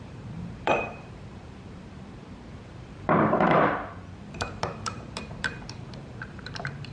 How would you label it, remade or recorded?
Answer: remade